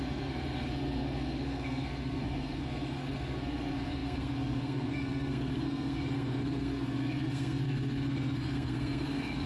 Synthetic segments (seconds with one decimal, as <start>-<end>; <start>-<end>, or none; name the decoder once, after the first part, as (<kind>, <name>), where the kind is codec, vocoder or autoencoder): 0.0-9.5 (codec, SNAC)